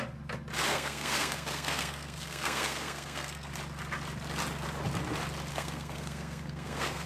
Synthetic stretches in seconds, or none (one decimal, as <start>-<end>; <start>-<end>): 0.7-3.5; 5.5-7.1